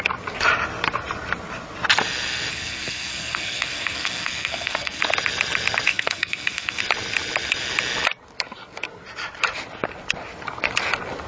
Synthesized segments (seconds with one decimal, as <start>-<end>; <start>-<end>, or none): 2.5-5.0; 5.9-6.8